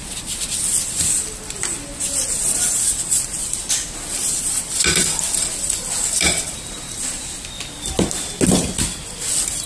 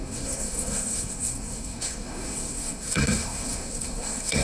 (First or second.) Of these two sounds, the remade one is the second